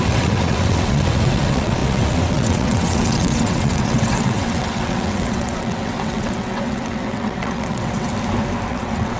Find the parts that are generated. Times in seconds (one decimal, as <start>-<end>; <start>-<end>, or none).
0.0-8.1; 8.7-9.2